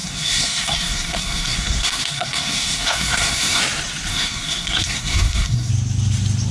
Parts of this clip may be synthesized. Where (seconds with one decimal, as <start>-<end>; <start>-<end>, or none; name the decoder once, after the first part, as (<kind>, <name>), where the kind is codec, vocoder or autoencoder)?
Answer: 0.0-3.6 (codec, SNAC); 4.1-5.7